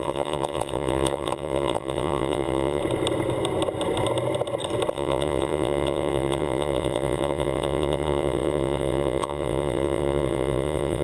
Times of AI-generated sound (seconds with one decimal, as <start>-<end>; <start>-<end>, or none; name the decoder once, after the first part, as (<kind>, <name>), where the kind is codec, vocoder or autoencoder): 0.0-2.8 (vocoder, WaveNeXt); 4.9-11.0